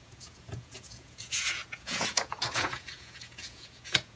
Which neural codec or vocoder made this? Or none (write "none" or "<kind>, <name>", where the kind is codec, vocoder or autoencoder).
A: vocoder, Vocos